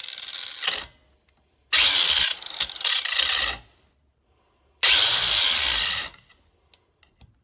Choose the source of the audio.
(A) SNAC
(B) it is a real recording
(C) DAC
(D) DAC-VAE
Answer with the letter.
B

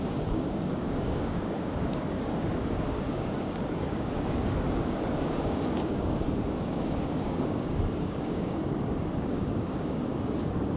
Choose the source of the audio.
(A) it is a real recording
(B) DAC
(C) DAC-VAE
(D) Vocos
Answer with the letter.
B